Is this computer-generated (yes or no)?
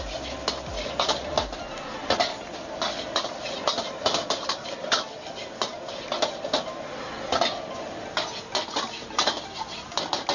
no